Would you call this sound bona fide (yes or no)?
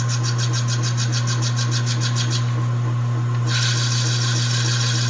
yes